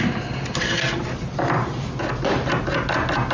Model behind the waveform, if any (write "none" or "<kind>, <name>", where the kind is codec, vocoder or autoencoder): none